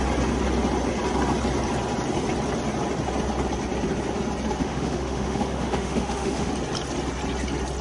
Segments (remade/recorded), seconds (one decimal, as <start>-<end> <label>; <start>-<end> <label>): 0.0-4.6 recorded; 4.6-6.5 remade; 6.5-7.8 recorded